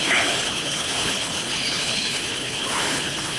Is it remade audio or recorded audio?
remade